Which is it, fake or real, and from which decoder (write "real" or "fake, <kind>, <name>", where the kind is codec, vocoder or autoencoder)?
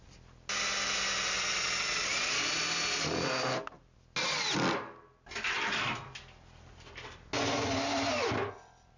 real